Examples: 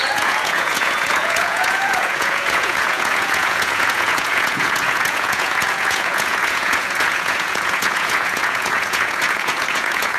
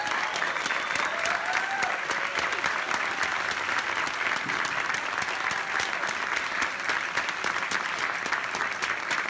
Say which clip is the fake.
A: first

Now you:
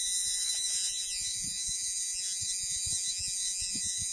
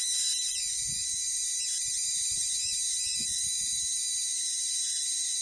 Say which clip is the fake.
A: first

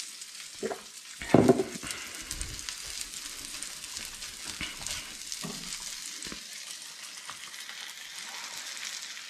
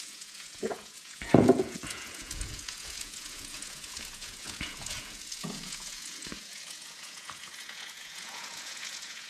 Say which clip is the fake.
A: second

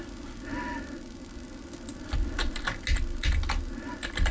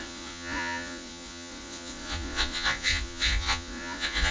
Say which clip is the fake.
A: second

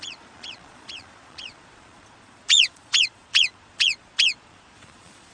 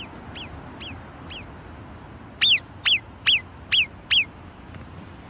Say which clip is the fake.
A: first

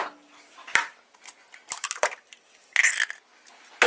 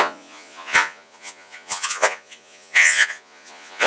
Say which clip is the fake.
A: second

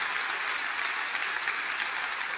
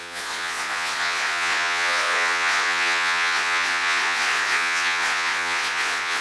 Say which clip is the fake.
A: second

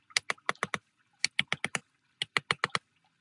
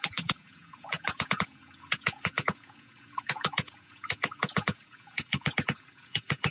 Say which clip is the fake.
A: second